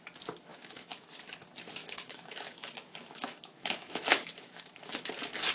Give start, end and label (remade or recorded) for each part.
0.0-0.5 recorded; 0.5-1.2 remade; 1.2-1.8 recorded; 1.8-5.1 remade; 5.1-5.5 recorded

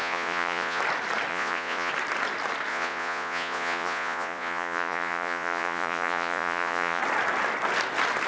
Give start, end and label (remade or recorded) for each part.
0.0-0.8 remade; 0.8-1.3 recorded; 1.3-1.9 remade; 1.9-2.7 recorded; 2.7-7.0 remade; 7.0-8.3 recorded

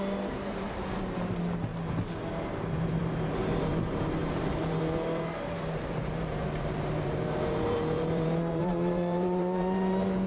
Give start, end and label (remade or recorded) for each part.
0.0-1.7 remade; 1.7-2.3 recorded; 2.3-10.3 remade

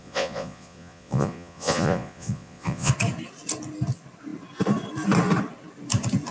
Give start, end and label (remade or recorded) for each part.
0.0-2.9 remade; 2.9-6.3 recorded

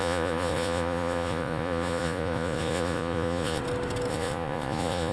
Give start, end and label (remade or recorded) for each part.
0.0-3.6 remade; 3.6-4.1 recorded; 4.1-5.1 remade

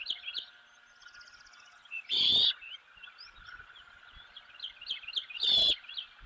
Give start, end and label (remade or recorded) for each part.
0.0-6.3 recorded